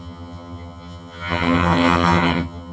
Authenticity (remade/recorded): remade